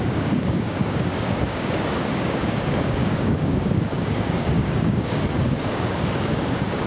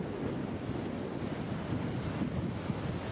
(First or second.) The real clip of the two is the second